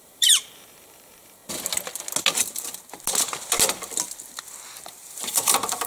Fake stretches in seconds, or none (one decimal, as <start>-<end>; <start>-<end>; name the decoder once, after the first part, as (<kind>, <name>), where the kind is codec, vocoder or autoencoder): 0.0-1.4 (vocoder, BigVGAN v2); 4.9-5.9